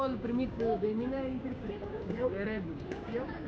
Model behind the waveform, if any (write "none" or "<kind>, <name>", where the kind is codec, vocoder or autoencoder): codec, DAC